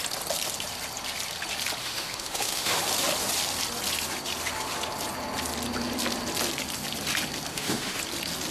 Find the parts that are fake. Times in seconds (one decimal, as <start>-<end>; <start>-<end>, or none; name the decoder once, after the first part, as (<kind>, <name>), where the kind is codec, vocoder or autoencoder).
1.8-2.8 (autoencoder, DAC-VAE); 7.5-8.0